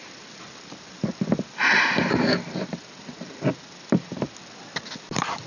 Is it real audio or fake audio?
real